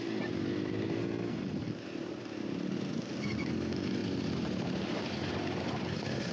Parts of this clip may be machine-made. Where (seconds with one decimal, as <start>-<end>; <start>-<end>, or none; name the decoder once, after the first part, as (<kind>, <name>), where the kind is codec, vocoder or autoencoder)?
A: 1.0-1.7 (codec, SNAC)